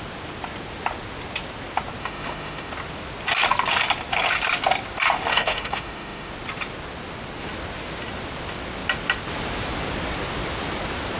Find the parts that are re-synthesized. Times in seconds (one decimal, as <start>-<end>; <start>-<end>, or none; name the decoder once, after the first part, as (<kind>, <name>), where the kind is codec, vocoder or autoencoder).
2.0-2.7 (autoencoder, DAC-VAE); 5.3-6.3